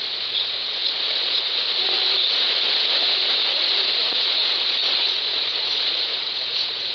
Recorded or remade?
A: remade